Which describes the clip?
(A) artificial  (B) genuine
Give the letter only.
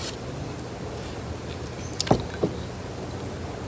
B